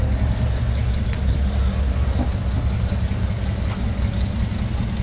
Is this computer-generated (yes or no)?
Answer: no